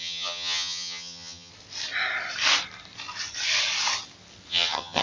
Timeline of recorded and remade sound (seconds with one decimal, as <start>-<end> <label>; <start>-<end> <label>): 0.0-1.5 remade; 1.5-4.5 recorded; 4.5-5.0 remade